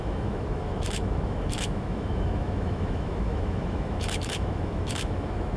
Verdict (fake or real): fake